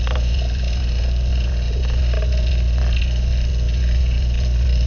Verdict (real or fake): real